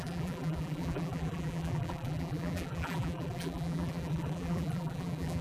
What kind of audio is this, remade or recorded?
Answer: remade